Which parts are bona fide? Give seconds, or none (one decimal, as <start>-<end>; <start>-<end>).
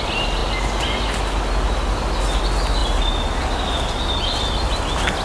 0.0-5.2